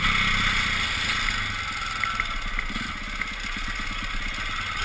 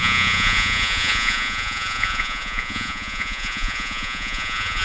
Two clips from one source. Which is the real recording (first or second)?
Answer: first